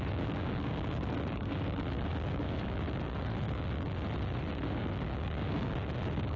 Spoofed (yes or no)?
yes